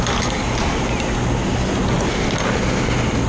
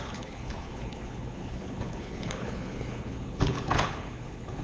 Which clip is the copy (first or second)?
second